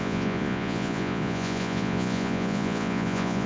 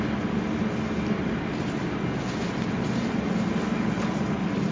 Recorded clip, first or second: second